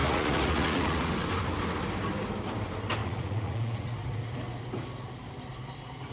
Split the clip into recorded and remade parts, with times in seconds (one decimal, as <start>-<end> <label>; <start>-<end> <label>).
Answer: 0.0-1.1 remade; 1.1-3.0 recorded; 3.0-4.4 remade; 4.4-6.1 recorded